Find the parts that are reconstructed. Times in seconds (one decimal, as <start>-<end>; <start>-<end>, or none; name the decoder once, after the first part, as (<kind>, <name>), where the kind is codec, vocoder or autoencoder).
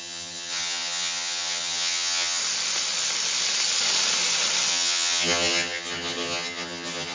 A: 0.0-2.4 (vocoder, HiFi-GAN); 4.7-7.1